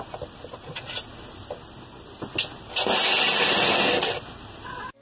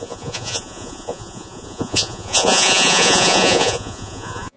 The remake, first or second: second